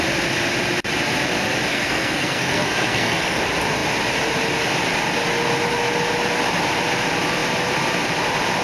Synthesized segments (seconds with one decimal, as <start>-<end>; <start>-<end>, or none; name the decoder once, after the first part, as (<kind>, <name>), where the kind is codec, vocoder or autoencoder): 1.7-3.4 (codec, SNAC)